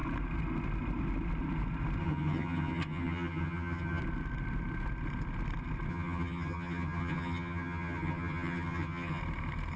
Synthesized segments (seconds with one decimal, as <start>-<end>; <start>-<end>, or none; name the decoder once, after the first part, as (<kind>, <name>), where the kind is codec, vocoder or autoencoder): 2.0-4.0 (vocoder, HiFi-GAN); 5.9-9.2